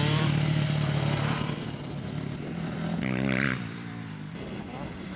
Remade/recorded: remade